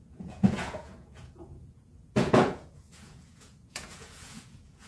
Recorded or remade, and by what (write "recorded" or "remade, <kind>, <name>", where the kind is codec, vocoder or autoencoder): remade, vocoder, Vocos